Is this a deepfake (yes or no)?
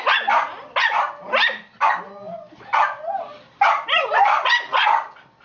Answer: no